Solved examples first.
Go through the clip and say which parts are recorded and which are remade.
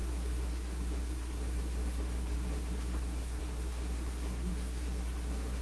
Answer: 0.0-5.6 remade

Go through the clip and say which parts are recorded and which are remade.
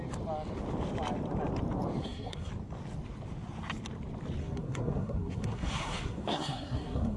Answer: 0.0-2.0 recorded; 2.0-2.5 remade; 2.5-4.4 recorded; 4.4-7.2 remade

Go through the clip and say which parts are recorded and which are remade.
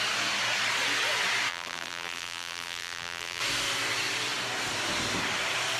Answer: 0.0-1.5 recorded; 1.5-3.4 remade; 3.4-5.8 recorded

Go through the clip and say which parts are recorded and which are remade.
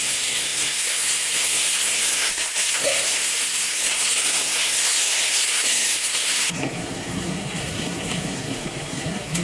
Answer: 0.0-9.4 remade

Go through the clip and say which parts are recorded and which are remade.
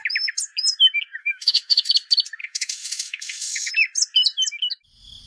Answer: 0.0-1.2 recorded; 1.2-1.9 remade; 1.9-2.4 recorded; 2.4-3.7 remade; 3.7-5.3 recorded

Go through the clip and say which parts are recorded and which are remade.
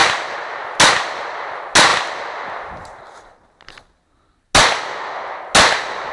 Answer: 0.0-6.1 recorded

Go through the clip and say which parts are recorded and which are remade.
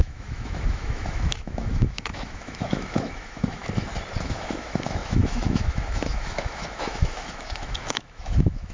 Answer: 0.0-3.6 remade; 3.6-4.2 recorded; 4.2-8.7 remade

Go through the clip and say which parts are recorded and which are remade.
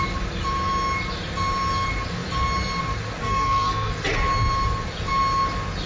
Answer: 0.0-3.2 recorded; 3.2-3.9 remade; 3.9-5.9 recorded